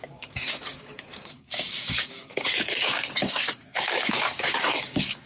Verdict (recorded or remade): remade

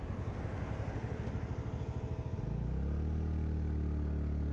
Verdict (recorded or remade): recorded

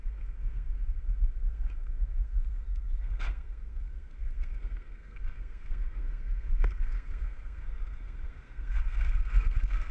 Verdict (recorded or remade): remade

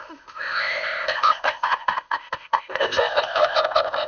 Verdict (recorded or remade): remade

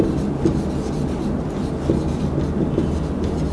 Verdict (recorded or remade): recorded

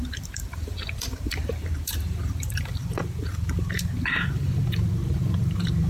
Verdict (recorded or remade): remade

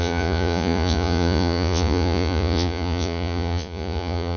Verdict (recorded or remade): remade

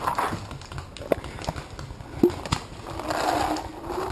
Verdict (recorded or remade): recorded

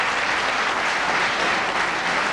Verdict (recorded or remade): recorded